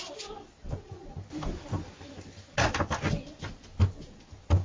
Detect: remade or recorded recorded